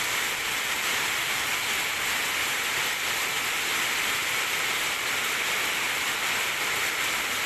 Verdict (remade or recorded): recorded